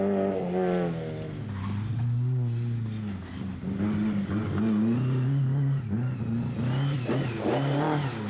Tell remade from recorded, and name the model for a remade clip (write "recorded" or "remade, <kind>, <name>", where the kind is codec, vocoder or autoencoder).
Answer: recorded